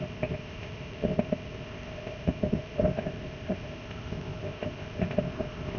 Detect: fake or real fake